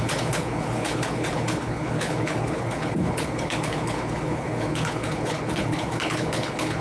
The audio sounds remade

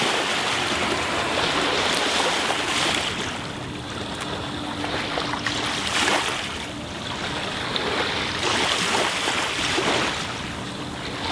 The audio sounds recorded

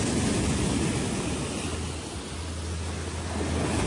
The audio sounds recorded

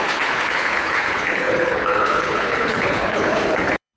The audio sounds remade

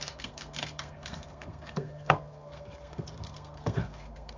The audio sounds remade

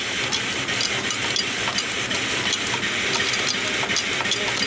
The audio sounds recorded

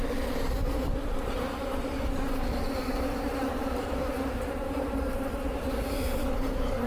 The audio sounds remade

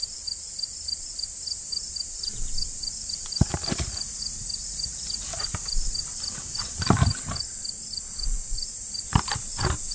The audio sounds recorded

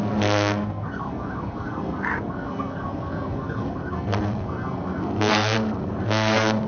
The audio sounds remade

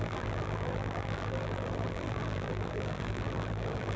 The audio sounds remade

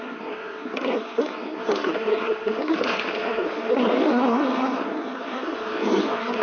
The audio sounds remade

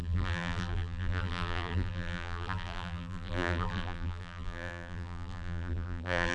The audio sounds remade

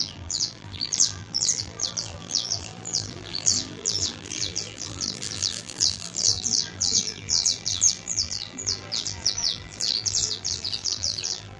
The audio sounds remade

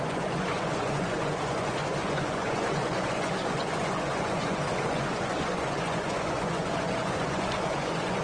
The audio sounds remade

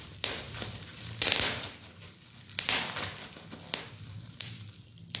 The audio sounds recorded